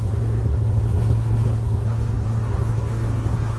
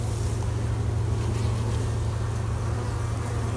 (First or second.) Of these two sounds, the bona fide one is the second